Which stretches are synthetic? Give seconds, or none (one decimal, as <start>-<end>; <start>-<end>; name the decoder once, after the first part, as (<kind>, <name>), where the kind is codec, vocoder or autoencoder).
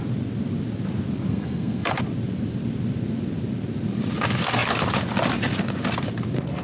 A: 1.3-2.0 (codec, SNAC)